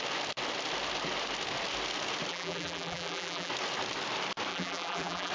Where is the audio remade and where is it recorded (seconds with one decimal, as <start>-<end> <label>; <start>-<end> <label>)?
0.0-2.3 recorded; 2.3-3.5 remade; 3.5-4.5 recorded; 4.5-5.3 remade